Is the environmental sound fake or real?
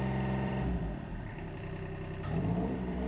fake